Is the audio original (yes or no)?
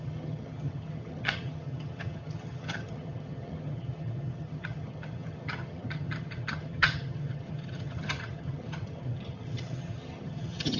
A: no